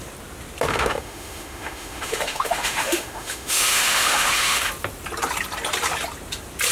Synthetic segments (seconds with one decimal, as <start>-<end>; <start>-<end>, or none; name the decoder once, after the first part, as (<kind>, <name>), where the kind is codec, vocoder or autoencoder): 0.7-4.7 (autoencoder, DAC-VAE)